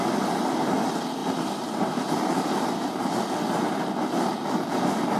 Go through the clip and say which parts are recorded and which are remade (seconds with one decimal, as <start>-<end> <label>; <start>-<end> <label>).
0.0-1.2 recorded; 1.2-3.0 remade; 3.0-5.2 recorded